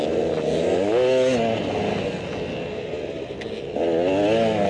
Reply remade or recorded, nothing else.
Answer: recorded